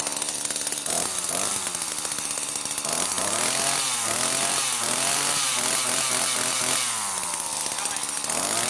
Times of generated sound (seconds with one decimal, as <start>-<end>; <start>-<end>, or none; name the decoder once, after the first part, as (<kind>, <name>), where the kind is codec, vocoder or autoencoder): none